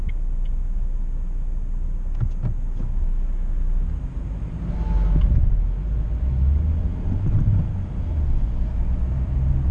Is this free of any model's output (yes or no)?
yes